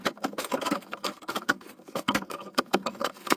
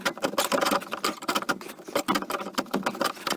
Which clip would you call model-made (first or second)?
first